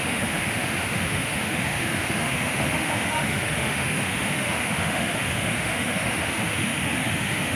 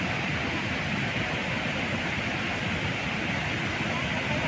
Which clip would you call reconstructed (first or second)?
first